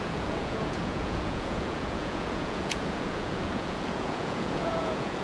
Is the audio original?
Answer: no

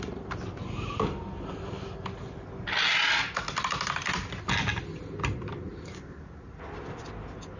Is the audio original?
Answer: yes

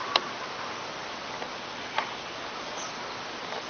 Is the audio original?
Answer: yes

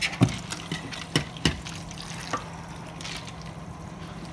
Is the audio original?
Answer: yes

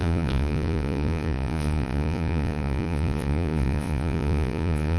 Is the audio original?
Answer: no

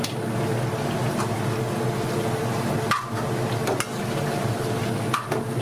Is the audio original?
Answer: yes